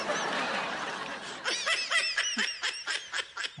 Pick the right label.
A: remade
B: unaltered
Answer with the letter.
B